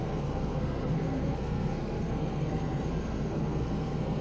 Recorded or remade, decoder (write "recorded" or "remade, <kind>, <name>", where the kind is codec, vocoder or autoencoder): remade, codec, SNAC